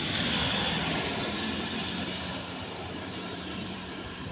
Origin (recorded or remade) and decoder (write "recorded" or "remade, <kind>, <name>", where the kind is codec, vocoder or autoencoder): remade, vocoder, BigVGAN v2